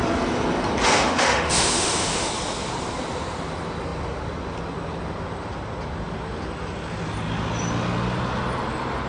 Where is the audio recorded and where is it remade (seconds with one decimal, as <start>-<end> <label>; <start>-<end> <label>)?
0.0-0.8 recorded; 0.8-2.3 remade; 2.3-9.1 recorded